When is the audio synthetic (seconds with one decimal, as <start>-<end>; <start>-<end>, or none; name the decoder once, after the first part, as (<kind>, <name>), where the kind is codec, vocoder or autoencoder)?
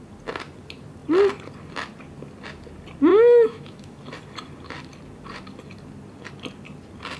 3.1-4.0 (autoencoder, DAC-VAE)